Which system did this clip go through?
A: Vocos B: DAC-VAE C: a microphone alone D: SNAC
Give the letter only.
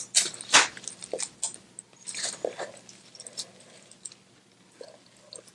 C